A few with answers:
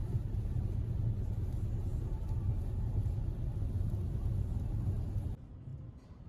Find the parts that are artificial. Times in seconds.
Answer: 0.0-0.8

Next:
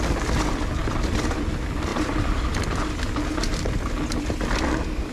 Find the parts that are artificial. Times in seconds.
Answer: 1.9-2.9

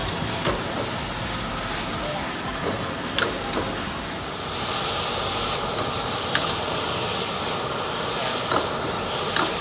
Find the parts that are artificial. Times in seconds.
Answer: 0.0-0.5

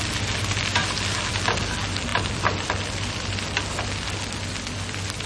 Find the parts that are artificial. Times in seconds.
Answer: none

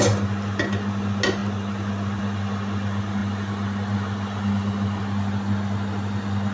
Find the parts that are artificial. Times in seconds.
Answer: none